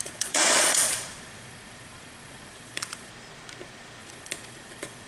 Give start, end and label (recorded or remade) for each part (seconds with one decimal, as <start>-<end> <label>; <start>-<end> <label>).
0.0-3.1 remade; 3.1-4.0 recorded; 4.0-5.1 remade